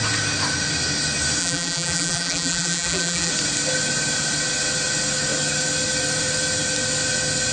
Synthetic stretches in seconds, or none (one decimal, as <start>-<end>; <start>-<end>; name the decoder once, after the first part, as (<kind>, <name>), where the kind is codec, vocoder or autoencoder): 1.4-3.3 (vocoder, BigVGAN v2)